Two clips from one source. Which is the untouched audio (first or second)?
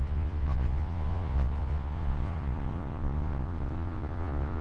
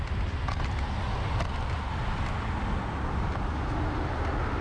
second